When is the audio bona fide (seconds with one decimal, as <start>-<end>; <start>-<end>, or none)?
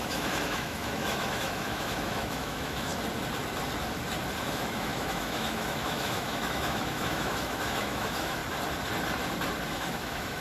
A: 2.9-4.4; 8.4-9.7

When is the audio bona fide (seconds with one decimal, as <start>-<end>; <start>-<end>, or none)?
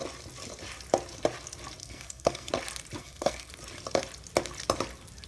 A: 0.0-1.8; 2.5-3.0; 3.5-5.3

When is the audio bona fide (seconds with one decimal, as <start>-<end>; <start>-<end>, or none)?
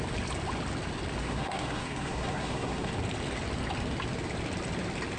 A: 0.0-1.2; 2.9-5.2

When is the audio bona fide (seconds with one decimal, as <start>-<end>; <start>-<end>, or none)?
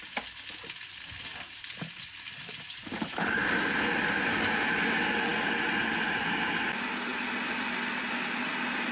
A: 0.0-8.9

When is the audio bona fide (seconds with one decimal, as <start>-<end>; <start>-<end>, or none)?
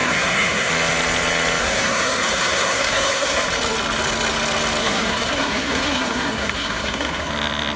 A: 0.7-1.6; 3.4-4.8; 7.3-7.8